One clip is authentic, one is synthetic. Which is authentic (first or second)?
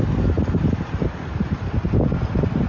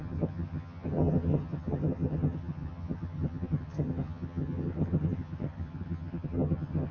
first